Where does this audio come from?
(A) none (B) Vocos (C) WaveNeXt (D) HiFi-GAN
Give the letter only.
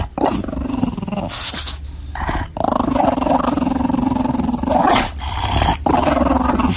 A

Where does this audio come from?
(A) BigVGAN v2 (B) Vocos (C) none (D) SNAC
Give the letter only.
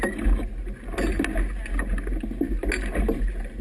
C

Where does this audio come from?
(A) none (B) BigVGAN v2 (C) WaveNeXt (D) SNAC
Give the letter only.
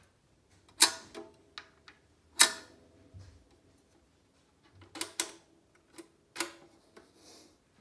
A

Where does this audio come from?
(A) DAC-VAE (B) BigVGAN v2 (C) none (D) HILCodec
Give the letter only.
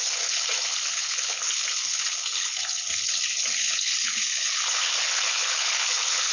D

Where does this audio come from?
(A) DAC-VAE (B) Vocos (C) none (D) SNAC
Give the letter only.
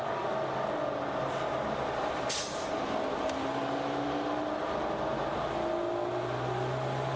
C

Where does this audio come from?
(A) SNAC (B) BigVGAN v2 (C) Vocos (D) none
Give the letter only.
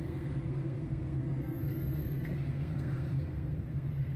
A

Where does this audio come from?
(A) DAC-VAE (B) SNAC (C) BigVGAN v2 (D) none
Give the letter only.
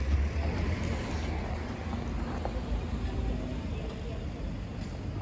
D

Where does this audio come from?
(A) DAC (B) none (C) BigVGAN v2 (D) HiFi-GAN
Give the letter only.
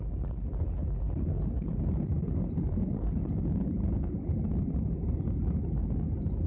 B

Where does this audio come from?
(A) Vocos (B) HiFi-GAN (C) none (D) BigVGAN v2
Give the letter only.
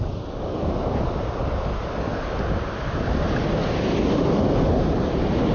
C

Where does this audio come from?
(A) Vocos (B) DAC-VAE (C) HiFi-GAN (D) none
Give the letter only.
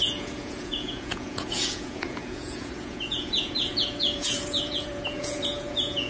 A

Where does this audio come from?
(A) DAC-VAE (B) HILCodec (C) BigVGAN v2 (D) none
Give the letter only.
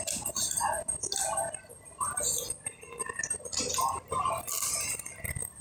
D